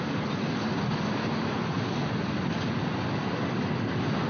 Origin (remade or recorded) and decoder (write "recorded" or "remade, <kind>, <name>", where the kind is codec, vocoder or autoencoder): recorded